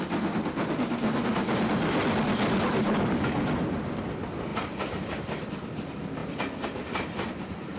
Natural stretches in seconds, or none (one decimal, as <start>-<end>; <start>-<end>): 0.0-7.8